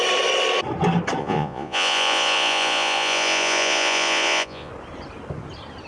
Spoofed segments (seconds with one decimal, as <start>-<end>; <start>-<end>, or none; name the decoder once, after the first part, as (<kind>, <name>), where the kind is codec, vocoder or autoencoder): 1.2-4.7 (vocoder, Vocos)